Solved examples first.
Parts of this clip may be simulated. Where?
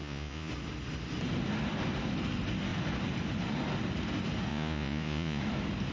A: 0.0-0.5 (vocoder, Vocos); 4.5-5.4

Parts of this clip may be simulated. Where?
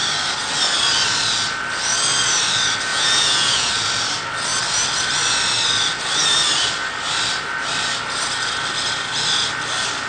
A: 2.9-3.7 (vocoder, Vocos)